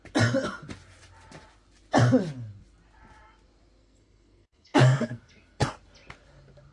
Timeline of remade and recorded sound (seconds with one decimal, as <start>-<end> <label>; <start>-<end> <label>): 0.0-3.8 recorded; 3.8-5.7 remade; 5.7-6.7 recorded